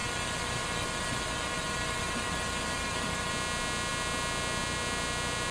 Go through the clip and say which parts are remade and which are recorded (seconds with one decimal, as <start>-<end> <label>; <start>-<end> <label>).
0.0-3.3 remade; 3.3-5.5 recorded